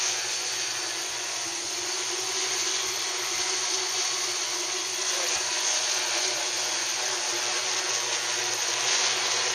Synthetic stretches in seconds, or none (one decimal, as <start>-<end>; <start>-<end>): 0.0-9.5